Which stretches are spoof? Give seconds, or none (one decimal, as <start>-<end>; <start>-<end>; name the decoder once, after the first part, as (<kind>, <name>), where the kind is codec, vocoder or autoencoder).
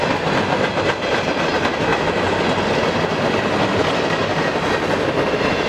none